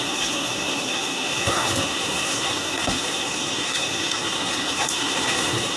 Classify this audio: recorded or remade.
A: remade